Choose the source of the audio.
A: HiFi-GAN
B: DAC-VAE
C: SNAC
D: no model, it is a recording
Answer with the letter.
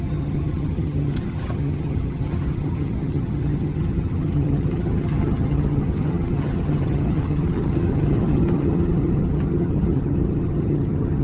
A